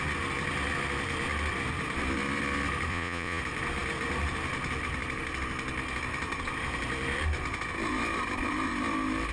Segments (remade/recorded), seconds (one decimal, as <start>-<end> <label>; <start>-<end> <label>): 0.0-2.9 recorded; 2.9-3.4 remade; 3.4-9.3 recorded

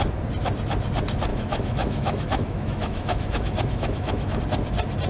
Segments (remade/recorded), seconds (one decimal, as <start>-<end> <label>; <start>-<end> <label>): 0.0-1.3 recorded; 1.3-4.4 remade; 4.4-5.1 recorded

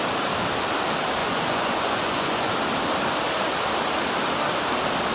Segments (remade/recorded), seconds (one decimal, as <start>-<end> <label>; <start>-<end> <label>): 0.0-1.2 recorded; 1.2-2.5 remade; 2.5-5.1 recorded

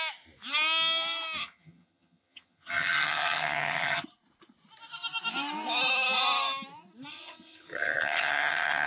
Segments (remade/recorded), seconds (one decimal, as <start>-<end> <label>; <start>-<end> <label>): 0.0-1.4 recorded; 1.4-4.0 remade; 4.0-7.1 recorded; 7.1-8.9 remade

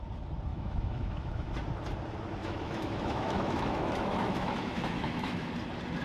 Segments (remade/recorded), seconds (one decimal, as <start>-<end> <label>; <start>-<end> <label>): 0.0-0.5 recorded; 0.5-1.5 remade; 1.5-2.4 recorded; 2.4-5.5 remade; 5.5-6.0 recorded

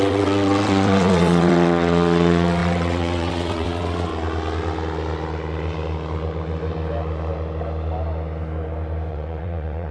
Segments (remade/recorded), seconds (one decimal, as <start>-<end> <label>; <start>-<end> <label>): 0.0-4.1 remade; 4.1-9.1 recorded; 9.1-9.9 remade

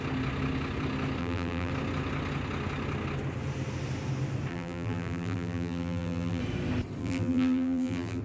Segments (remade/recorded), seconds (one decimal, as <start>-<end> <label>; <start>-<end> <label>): 0.0-1.2 recorded; 1.2-1.7 remade; 1.7-4.5 recorded; 4.5-6.4 remade; 6.4-7.0 recorded; 7.0-8.2 remade